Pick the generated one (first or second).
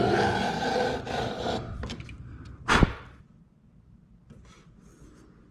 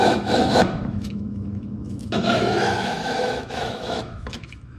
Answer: second